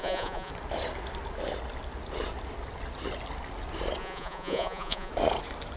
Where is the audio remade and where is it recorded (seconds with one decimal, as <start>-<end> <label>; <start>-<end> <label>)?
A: 0.0-0.5 remade; 0.5-4.0 recorded; 4.0-5.1 remade; 5.1-5.8 recorded